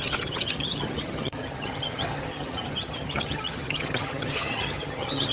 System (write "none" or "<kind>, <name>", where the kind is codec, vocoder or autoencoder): vocoder, HiFi-GAN